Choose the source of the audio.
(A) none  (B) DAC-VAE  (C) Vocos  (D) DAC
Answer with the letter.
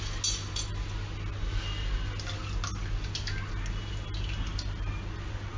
A